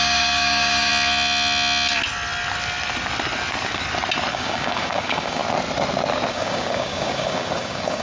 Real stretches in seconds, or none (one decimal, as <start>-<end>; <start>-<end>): 0.9-4.3; 5.4-6.3